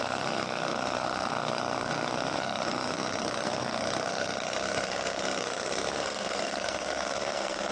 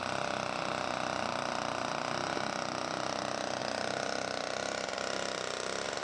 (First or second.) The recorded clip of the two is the second